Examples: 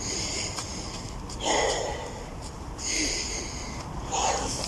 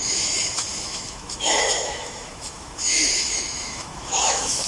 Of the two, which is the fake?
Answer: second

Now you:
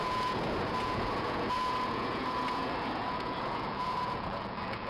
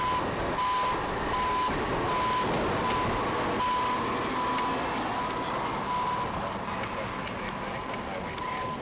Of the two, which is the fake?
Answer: first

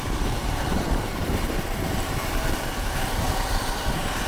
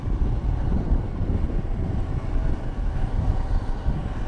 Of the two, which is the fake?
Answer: first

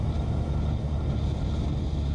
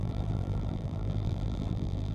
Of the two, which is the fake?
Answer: second